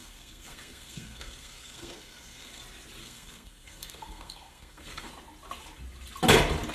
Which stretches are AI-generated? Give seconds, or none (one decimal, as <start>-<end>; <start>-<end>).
0.0-2.6; 3.0-5.1

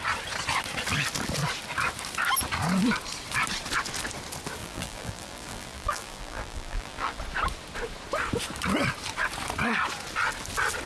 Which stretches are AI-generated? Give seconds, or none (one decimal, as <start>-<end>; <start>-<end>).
4.6-7.2

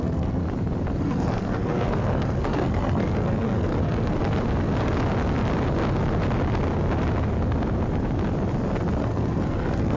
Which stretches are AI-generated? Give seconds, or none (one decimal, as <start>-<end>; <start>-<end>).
0.0-0.4; 1.0-4.2; 9.0-10.0

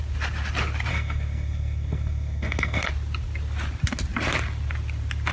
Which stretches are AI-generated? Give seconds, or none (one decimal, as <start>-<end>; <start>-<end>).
0.9-2.9